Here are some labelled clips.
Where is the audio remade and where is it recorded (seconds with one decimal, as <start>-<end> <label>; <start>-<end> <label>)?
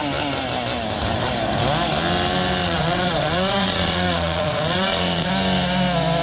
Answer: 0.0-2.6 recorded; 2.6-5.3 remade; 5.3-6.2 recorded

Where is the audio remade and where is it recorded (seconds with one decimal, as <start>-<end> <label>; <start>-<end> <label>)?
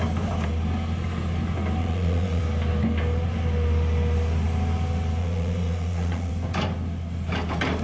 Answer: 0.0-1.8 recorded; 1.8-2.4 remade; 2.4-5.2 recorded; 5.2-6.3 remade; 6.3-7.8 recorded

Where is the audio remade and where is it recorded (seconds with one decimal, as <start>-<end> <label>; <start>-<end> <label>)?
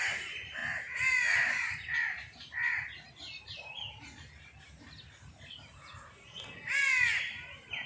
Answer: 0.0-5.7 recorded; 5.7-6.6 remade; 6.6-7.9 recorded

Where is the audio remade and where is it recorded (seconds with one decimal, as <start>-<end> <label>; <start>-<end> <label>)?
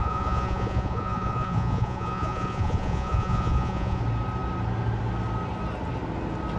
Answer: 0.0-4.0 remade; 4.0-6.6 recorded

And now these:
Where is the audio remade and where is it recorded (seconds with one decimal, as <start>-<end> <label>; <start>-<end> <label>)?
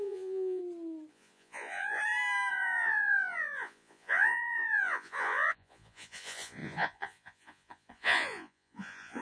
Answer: 0.0-0.6 remade; 0.6-1.1 recorded; 1.1-2.0 remade; 2.0-2.5 recorded; 2.5-9.2 remade